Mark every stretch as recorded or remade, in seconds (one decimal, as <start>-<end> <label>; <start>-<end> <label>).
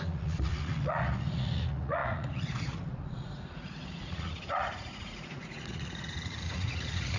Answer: 0.0-7.2 remade